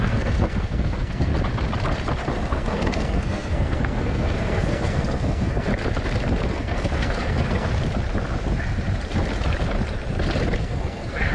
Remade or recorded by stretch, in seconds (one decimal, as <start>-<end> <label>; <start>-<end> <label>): 0.0-1.3 remade; 1.3-2.5 recorded; 2.5-5.7 remade; 5.7-6.5 recorded; 6.5-7.7 remade; 7.7-10.6 recorded; 10.6-11.3 remade